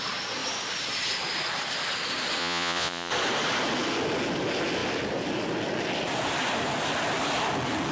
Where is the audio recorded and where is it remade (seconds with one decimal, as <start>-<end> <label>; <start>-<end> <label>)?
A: 0.0-2.4 recorded; 2.4-3.1 remade; 3.1-7.9 recorded